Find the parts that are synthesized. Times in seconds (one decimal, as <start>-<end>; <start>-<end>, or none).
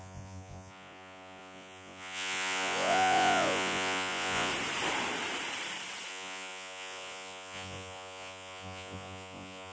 0.0-4.5; 6.1-9.7